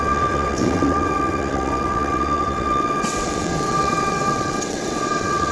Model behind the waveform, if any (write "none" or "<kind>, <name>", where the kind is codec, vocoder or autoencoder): vocoder, WaveNeXt